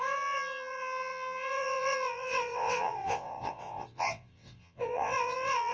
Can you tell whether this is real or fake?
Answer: fake